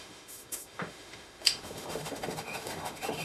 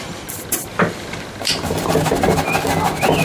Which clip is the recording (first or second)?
second